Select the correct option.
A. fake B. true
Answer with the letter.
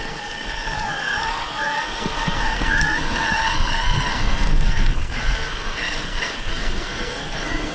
A